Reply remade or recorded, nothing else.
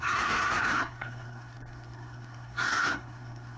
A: remade